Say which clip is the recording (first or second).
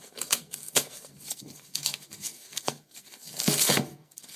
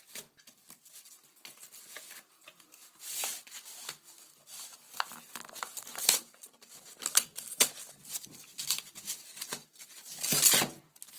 second